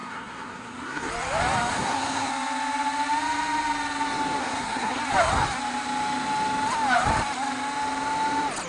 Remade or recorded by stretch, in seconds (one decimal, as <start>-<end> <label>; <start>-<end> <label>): 0.0-1.1 remade; 1.1-1.7 recorded; 1.7-2.3 remade; 2.3-4.4 recorded; 4.4-5.0 remade; 5.0-8.7 recorded